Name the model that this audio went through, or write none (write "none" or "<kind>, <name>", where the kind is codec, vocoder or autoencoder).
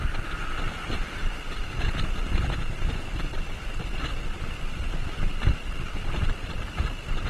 none